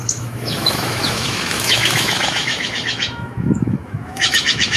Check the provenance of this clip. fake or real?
fake